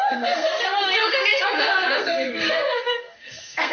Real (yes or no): no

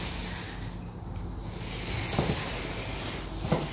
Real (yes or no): yes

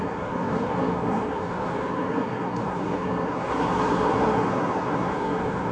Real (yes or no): no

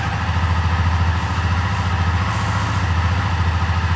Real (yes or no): yes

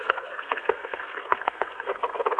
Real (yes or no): no